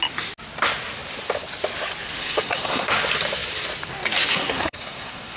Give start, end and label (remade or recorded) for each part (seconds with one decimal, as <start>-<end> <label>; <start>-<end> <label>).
0.0-2.2 recorded; 2.2-2.9 remade; 2.9-4.3 recorded; 4.3-5.4 remade

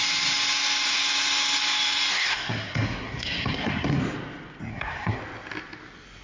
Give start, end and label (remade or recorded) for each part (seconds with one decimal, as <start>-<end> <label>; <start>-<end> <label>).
0.0-2.1 recorded; 2.1-4.0 remade; 4.0-4.7 recorded; 4.7-5.2 remade; 5.2-6.2 recorded

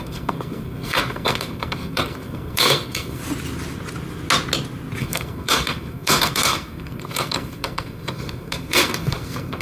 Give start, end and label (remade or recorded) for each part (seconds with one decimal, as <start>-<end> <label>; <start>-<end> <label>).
0.0-3.2 remade; 3.2-5.0 recorded; 5.0-9.6 remade

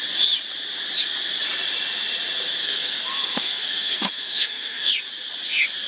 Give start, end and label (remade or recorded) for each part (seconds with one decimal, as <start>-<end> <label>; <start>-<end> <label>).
0.0-2.6 recorded; 2.6-4.9 remade; 4.9-5.9 recorded

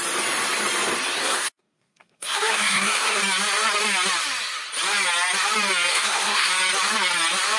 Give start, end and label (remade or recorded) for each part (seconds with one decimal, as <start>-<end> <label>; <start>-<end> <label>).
0.0-1.2 recorded; 1.2-3.2 remade; 3.2-5.9 recorded; 5.9-6.5 remade; 6.5-7.6 recorded